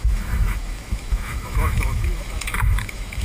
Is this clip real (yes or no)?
no